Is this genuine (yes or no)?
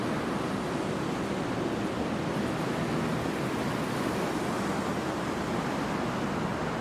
yes